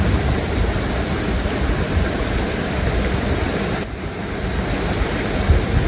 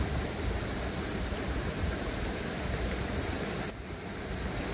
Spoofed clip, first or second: second